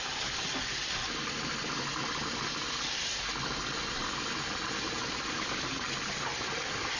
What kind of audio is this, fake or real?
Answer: real